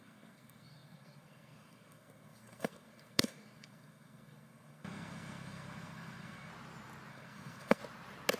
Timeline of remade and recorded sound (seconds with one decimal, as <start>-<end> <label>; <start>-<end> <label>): 0.0-6.5 remade; 6.5-7.1 recorded; 7.1-7.8 remade; 7.8-8.4 recorded